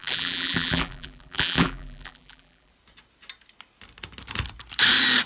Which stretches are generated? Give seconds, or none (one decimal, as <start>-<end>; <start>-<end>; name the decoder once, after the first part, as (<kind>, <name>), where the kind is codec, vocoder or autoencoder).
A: 0.0-2.7 (vocoder, BigVGAN v2)